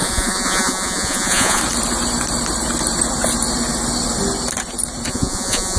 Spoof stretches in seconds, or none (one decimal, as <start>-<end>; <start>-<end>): 0.0-1.6; 5.1-5.8